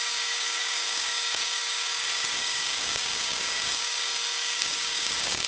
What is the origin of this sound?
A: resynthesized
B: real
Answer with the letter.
A